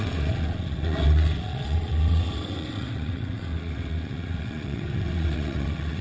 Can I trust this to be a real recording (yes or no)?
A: no